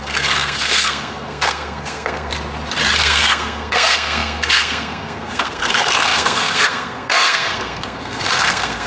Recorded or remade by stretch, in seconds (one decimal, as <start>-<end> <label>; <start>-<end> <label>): 0.0-2.3 remade; 2.3-3.0 recorded; 3.0-8.9 remade